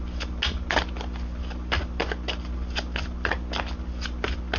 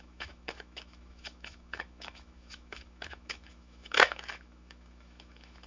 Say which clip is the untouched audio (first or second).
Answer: first